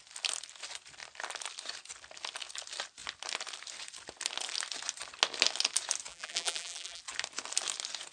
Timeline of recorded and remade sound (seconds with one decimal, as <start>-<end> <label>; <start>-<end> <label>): 0.0-6.1 recorded; 6.1-7.0 remade; 7.0-8.1 recorded